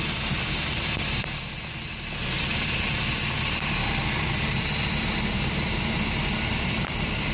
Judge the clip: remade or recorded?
recorded